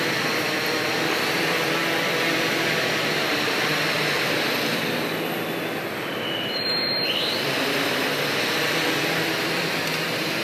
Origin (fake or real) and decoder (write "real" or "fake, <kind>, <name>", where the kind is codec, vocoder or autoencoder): fake, vocoder, BigVGAN v2